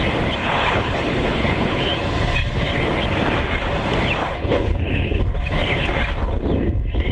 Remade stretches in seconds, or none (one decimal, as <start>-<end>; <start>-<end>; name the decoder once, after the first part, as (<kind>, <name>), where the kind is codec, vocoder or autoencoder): 0.4-1.9 (codec, HILCodec); 4.2-5.2